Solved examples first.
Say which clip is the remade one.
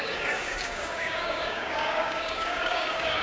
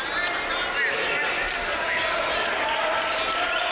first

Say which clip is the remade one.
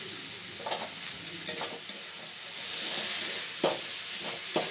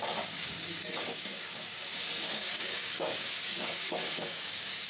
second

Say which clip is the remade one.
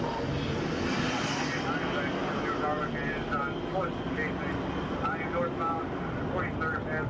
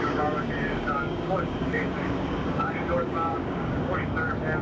second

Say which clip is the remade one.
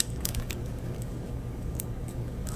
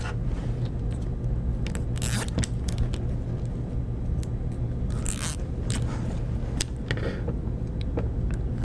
first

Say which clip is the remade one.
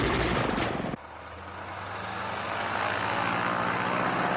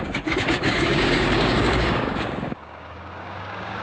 second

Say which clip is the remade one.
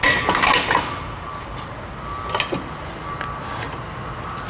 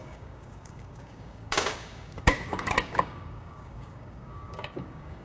second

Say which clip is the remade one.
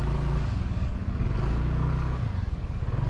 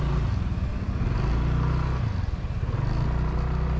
first